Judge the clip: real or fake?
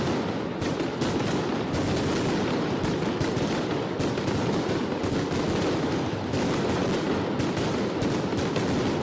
real